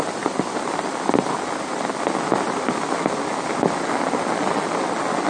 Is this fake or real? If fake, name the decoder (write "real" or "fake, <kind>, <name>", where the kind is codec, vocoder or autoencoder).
real